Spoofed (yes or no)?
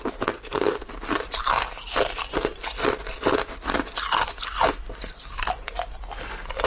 no